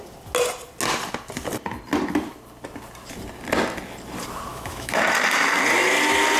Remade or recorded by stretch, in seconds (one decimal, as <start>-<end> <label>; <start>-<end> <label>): 0.0-4.5 recorded; 4.5-5.0 remade; 5.0-6.4 recorded